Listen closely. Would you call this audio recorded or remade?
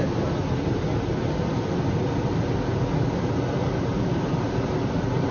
recorded